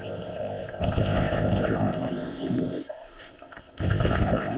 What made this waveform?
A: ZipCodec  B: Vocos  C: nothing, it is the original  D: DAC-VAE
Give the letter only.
A